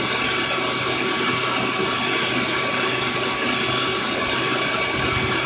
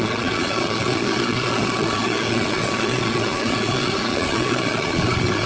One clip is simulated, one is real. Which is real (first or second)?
first